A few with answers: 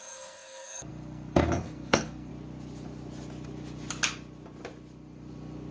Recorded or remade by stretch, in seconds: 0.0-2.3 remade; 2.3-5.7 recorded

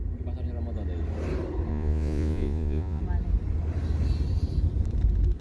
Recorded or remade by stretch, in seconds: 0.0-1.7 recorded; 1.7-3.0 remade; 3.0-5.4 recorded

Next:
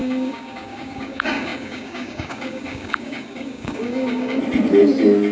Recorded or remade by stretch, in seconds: 0.0-4.4 remade; 4.4-5.3 recorded

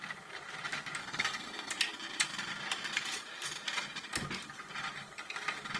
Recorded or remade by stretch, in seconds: 0.0-1.0 recorded; 1.0-1.7 remade; 1.7-5.8 recorded